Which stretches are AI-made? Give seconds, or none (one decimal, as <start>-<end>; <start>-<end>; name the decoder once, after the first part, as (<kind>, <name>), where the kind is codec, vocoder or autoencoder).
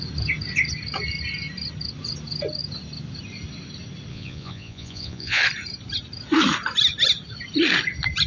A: 4.1-5.4 (vocoder, Vocos)